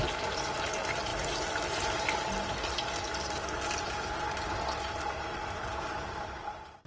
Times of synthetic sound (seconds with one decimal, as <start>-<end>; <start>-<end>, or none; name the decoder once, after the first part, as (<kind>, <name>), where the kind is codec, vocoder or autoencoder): none